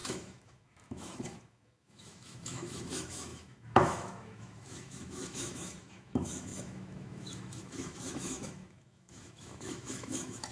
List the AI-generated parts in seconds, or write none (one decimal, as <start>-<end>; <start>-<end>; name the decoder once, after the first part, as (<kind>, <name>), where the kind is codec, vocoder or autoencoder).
0.0-10.5 (autoencoder, DAC-VAE)